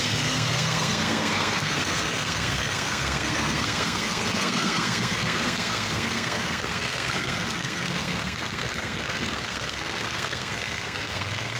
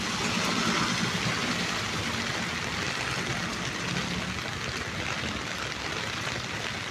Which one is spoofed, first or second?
first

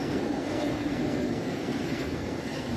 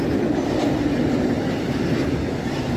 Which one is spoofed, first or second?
first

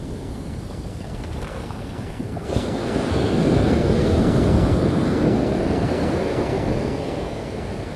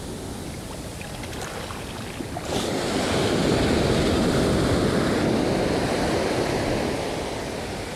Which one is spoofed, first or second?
first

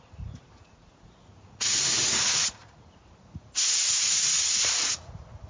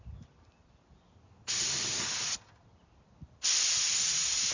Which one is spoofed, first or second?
first